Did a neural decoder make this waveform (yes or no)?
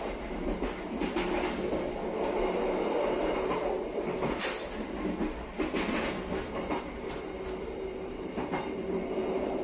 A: no